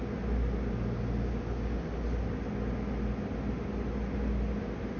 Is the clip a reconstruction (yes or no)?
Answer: no